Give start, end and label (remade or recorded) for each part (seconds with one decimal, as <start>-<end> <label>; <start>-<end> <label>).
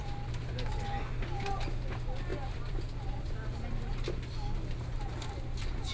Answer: 0.0-1.4 remade; 1.4-2.3 recorded; 2.3-3.9 remade; 3.9-5.9 recorded